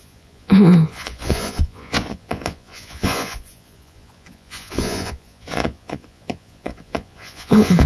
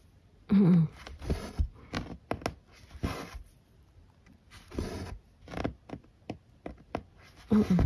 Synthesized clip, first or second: first